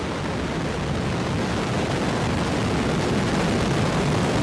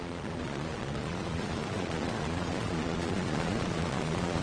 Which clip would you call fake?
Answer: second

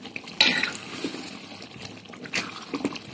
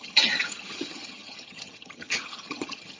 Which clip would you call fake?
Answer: second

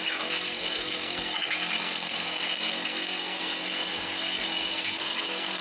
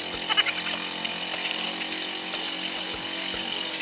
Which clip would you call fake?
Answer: first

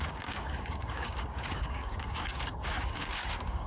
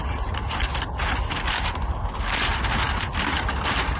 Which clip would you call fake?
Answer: first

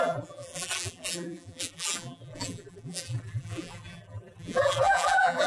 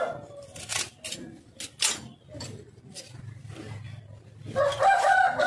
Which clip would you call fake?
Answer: first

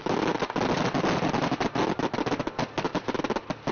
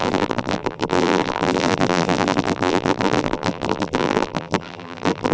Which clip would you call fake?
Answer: second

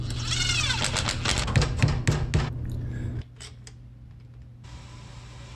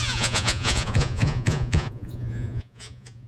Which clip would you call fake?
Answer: second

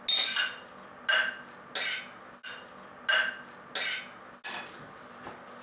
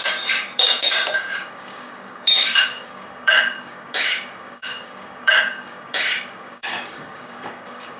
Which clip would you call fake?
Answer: second